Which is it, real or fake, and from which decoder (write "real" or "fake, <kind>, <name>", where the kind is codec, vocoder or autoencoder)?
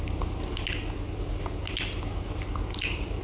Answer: real